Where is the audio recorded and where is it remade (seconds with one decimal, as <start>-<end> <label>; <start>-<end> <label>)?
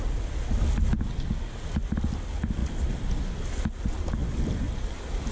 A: 0.0-5.3 recorded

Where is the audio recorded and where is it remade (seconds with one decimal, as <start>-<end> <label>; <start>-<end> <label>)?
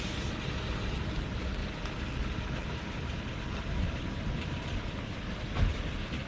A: 0.0-1.6 remade; 1.6-4.9 recorded; 4.9-6.3 remade